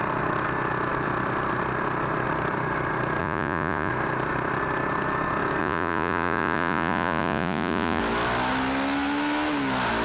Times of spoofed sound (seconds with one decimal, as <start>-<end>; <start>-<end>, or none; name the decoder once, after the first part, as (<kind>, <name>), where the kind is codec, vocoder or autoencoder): 3.2-3.9 (vocoder, Vocos); 5.6-8.0

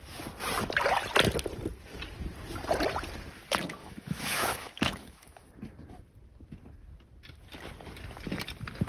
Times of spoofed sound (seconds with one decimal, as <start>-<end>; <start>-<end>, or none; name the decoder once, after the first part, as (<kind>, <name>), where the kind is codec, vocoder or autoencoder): 3.8-5.5 (autoencoder, DAC-VAE)

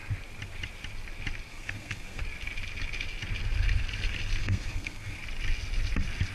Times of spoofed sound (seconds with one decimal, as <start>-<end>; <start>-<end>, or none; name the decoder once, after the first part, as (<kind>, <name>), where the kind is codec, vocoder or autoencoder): 1.5-2.2 (codec, SNAC); 4.4-5.2

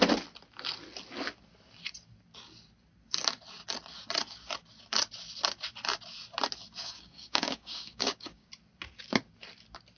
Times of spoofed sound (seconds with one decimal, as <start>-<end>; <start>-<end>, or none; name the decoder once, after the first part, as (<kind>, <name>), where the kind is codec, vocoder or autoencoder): 6.8-8.5 (codec, DAC)

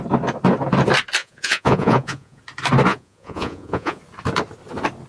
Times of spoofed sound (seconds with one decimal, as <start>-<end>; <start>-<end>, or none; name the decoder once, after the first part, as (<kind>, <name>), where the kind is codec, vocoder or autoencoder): 1.2-2.4 (vocoder, Vocos); 2.9-4.0

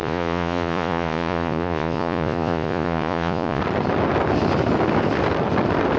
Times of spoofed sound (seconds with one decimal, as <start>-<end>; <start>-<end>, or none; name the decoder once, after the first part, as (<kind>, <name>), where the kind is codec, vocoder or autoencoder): 0.0-3.6 (vocoder, Vocos)

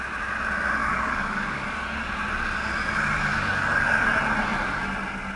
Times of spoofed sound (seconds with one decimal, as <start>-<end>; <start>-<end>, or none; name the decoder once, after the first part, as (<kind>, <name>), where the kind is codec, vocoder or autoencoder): 0.8-2.1 (codec, DAC); 3.3-4.1

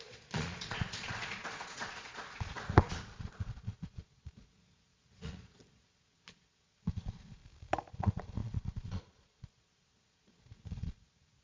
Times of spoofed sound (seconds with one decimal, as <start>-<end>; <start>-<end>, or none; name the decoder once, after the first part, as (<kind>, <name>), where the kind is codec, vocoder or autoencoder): 0.0-7.4 (vocoder, Vocos); 7.9-11.4